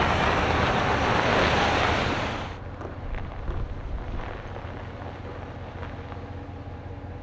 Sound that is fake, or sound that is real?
real